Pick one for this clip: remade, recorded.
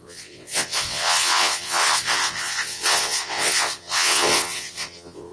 remade